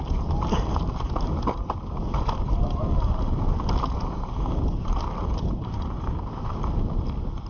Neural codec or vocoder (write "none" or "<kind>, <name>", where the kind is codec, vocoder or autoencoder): vocoder, BigVGAN v2